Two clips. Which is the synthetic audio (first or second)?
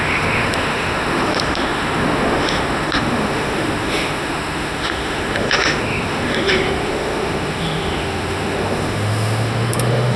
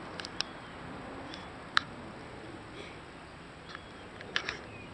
first